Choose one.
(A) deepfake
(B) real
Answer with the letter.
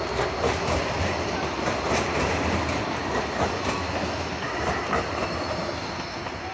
B